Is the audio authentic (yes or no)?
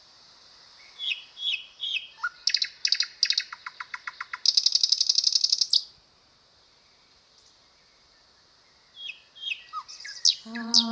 yes